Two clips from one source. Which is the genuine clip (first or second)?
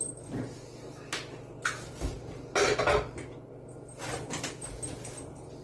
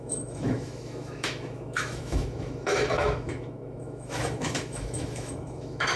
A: first